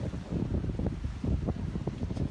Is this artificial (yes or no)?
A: no